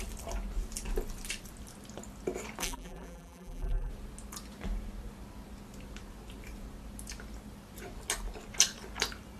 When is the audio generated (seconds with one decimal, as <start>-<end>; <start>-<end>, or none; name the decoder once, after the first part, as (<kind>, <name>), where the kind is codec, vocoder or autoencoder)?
2.6-3.9 (vocoder, BigVGAN v2)